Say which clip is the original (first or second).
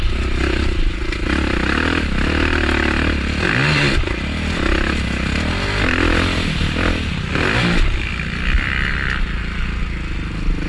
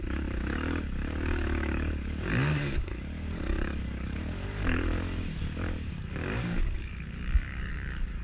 first